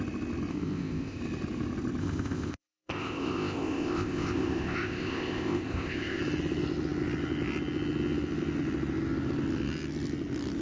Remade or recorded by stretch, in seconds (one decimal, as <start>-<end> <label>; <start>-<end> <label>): 0.0-0.5 recorded; 0.5-1.2 remade; 1.2-2.0 recorded; 2.0-6.2 remade; 6.2-10.6 recorded